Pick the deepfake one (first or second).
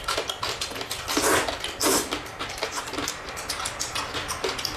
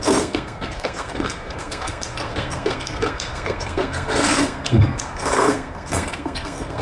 second